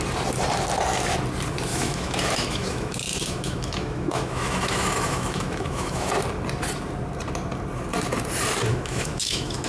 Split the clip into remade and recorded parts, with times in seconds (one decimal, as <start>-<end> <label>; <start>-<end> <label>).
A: 0.0-1.7 recorded; 1.7-6.1 remade; 6.1-8.7 recorded; 8.7-9.7 remade